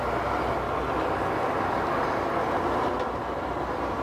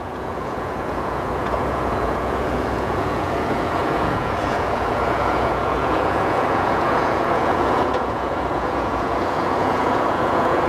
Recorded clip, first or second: first